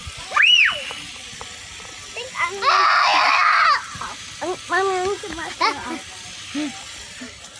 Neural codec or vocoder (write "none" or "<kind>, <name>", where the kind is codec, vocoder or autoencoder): none